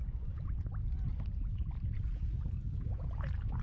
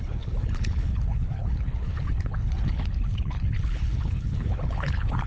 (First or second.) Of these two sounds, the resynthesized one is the second